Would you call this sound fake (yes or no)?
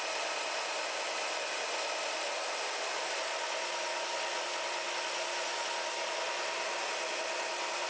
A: no